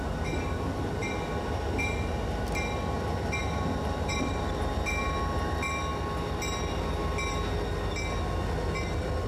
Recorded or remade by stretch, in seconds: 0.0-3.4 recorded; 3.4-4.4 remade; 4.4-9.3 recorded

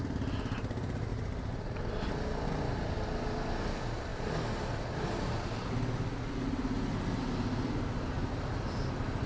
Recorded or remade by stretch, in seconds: 0.0-1.1 recorded; 1.1-2.1 remade; 2.1-9.3 recorded

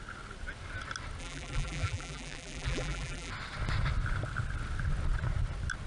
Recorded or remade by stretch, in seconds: 0.0-1.2 recorded; 1.2-3.3 remade; 3.3-5.9 recorded

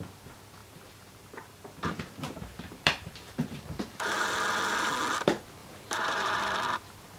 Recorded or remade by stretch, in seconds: 0.0-0.6 recorded; 0.6-4.3 remade; 4.3-5.6 recorded; 5.6-6.4 remade; 6.4-7.2 recorded

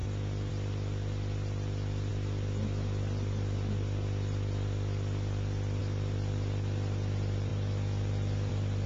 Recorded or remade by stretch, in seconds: 0.0-8.9 recorded

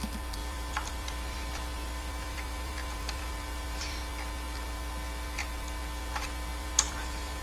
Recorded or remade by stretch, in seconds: 0.0-0.4 recorded; 0.4-4.0 remade; 4.0-6.5 recorded; 6.5-7.4 remade

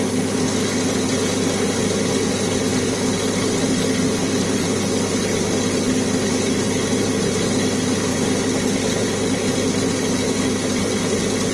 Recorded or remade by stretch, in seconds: 0.0-11.5 recorded

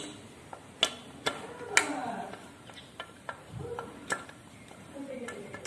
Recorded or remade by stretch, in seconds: 0.0-2.0 recorded; 2.0-5.7 remade